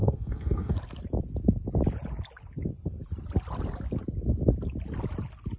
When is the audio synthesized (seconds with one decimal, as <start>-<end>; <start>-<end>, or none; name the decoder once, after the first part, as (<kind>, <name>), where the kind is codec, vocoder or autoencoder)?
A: 0.0-0.7 (codec, SNAC)